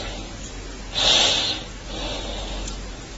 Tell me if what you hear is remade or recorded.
recorded